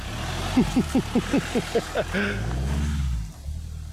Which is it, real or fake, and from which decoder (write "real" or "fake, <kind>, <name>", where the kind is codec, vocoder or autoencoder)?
real